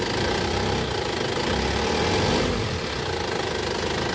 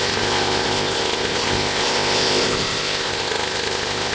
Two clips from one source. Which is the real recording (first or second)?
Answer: first